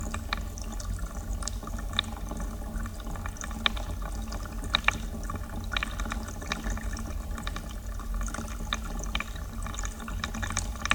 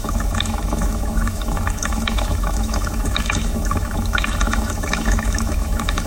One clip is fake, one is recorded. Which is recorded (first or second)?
first